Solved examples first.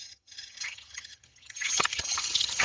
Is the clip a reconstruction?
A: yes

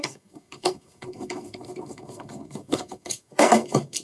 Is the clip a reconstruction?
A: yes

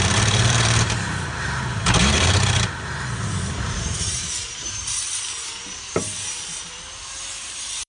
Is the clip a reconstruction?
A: yes